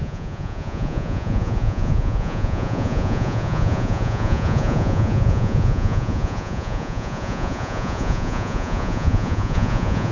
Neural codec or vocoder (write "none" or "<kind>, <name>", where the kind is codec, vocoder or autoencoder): vocoder, Vocos